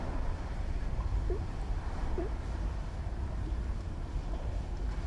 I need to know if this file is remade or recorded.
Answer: remade